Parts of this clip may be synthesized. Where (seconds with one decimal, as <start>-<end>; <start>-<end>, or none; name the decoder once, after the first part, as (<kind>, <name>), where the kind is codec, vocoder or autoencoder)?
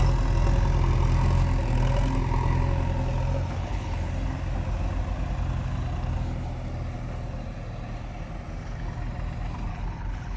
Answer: 3.6-4.1 (codec, HILCodec); 9.7-10.4